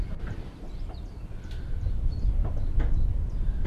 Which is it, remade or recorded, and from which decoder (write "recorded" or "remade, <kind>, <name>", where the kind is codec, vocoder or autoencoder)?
remade, vocoder, BigVGAN v2